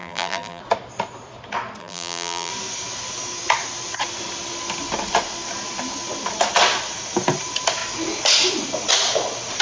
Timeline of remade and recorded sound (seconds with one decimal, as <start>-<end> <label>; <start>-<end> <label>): 0.0-0.6 remade; 0.6-1.8 recorded; 1.8-2.5 remade; 2.5-9.6 recorded